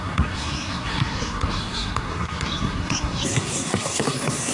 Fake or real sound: fake